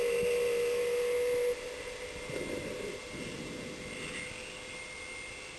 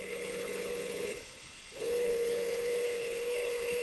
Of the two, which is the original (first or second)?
first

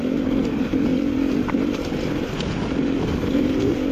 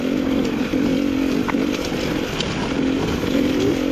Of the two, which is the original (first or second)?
second